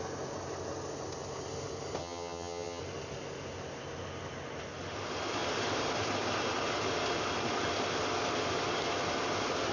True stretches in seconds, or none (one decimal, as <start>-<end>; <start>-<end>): 0.0-2.0; 2.8-9.7